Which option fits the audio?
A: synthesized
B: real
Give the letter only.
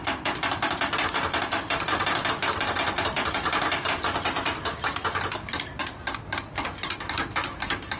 B